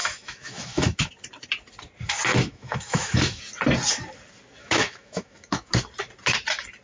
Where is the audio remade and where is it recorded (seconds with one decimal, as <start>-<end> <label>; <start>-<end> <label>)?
0.0-1.1 remade; 1.1-2.3 recorded; 2.3-3.4 remade; 3.4-4.6 recorded; 4.6-5.7 remade; 5.7-6.8 recorded